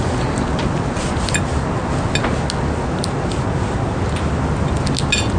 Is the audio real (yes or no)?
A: yes